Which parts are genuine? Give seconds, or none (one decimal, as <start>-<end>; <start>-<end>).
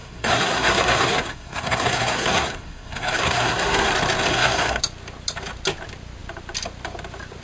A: 3.9-4.3; 4.8-7.4